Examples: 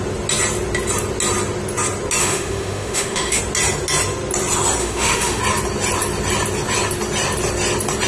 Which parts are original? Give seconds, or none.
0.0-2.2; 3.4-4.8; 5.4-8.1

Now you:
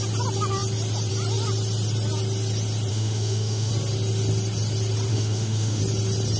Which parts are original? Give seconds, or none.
0.0-2.9; 3.7-5.1; 5.8-6.4

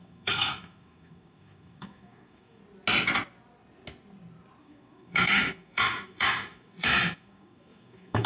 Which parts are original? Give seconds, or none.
2.6-4.6

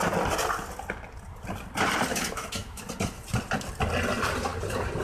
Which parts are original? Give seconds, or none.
0.0-2.1; 2.8-5.0

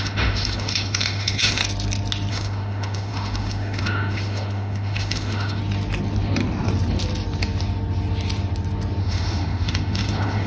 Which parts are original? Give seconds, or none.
1.6-2.3; 5.6-9.0

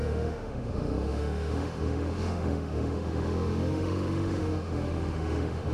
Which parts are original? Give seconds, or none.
none

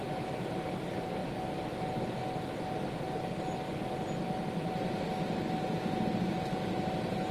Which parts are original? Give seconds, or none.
0.0-7.3

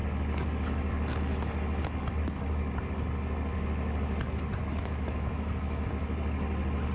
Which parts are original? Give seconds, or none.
0.0-4.6; 5.9-6.9